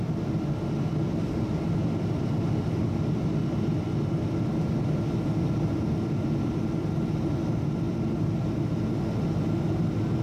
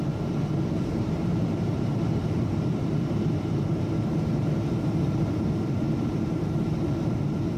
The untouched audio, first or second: first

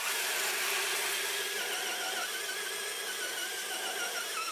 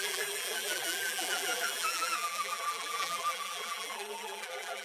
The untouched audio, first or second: first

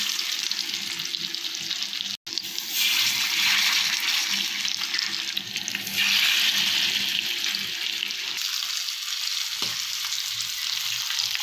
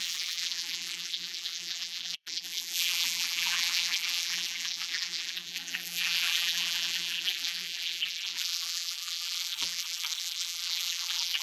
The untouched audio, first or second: first